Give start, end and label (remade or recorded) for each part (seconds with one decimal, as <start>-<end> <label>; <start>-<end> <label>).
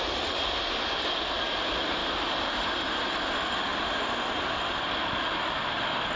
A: 0.0-2.0 recorded; 2.0-2.7 remade; 2.7-6.2 recorded